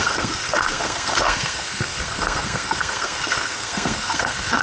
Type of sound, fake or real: fake